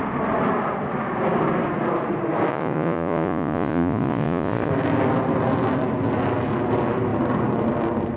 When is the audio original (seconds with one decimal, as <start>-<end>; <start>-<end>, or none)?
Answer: 0.0-2.5; 4.7-8.2